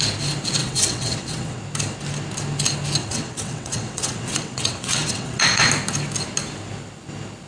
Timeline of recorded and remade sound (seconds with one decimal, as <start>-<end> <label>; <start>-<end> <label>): 0.0-0.6 recorded; 0.6-1.6 remade; 1.6-3.0 recorded; 3.0-5.7 remade; 5.7-7.5 recorded

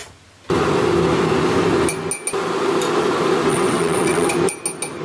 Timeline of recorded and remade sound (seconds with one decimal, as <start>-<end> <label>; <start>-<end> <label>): 0.0-3.5 recorded; 3.5-4.3 remade; 4.3-5.0 recorded

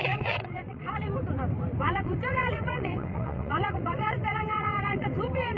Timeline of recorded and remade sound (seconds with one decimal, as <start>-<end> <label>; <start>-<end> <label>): 0.0-1.1 remade; 1.1-1.8 recorded; 1.8-5.6 remade

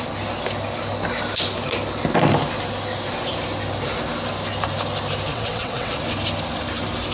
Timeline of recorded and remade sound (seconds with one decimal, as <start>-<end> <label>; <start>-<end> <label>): 0.0-5.3 recorded; 5.3-5.9 remade; 5.9-7.1 recorded

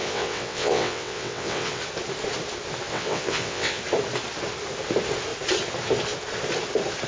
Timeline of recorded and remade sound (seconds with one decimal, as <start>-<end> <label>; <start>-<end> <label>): 0.0-1.8 remade; 1.8-2.9 recorded; 2.9-3.8 remade; 3.8-7.1 recorded

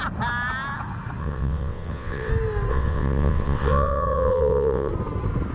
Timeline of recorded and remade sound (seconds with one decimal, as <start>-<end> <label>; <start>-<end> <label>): 0.0-1.2 recorded; 1.2-2.3 remade; 2.3-2.7 recorded; 2.7-4.9 remade; 4.9-5.5 recorded